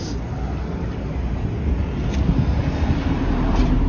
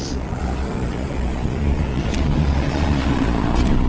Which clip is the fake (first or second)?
second